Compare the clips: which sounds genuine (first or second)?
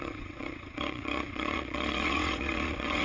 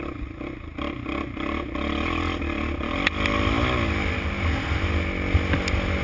second